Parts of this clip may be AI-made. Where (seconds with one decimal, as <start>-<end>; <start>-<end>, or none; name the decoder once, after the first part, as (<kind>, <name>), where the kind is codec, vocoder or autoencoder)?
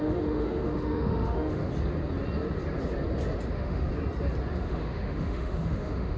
0.0-1.7 (autoencoder, DAC-VAE); 3.5-3.9; 4.5-6.2